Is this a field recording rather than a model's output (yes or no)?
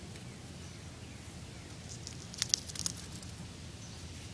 yes